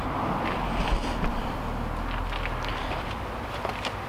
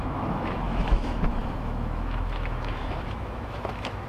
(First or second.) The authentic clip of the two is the first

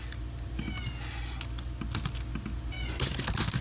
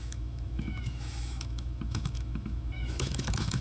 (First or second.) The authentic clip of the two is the first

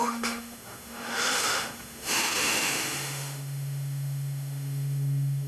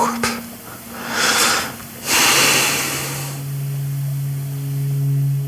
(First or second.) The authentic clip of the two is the second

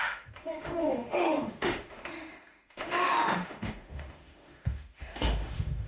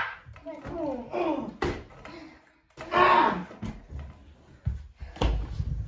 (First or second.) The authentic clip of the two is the second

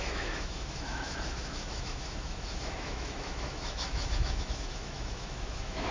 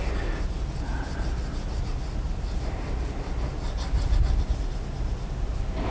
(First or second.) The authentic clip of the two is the second